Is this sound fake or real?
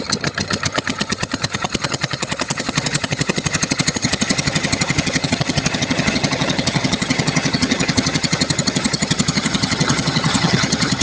fake